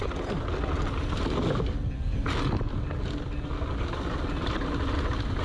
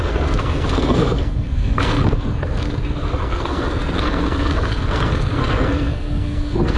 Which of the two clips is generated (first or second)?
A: second